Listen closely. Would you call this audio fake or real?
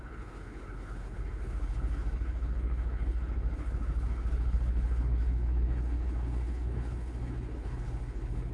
fake